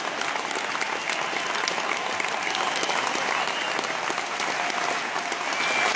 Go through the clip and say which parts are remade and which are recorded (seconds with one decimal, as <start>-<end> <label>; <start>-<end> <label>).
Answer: 0.0-6.0 recorded